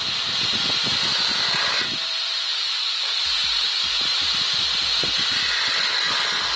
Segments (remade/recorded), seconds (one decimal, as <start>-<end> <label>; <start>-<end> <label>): 0.0-1.1 recorded; 1.1-4.2 remade; 4.2-6.6 recorded